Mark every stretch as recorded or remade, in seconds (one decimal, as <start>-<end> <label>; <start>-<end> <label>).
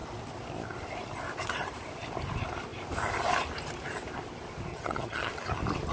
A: 0.0-4.7 recorded; 4.7-5.3 remade; 5.3-5.9 recorded